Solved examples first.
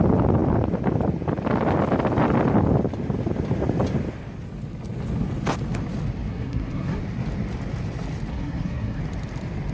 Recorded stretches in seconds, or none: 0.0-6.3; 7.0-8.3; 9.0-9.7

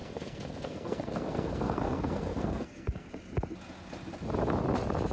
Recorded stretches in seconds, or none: 3.1-5.1

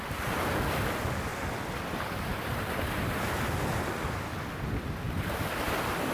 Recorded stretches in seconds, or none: 0.0-6.1

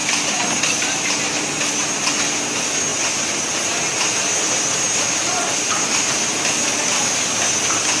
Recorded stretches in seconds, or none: 0.0-8.0

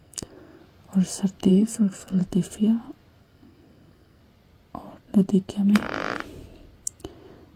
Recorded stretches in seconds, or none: 0.6-1.5; 2.2-3.2; 4.2-7.6

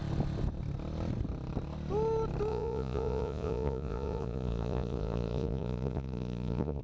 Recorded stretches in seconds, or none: 0.0-2.5